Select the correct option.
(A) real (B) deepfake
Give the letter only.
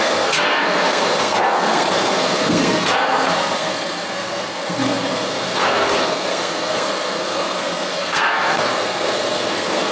B